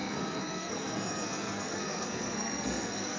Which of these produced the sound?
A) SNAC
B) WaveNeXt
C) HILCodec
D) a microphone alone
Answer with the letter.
A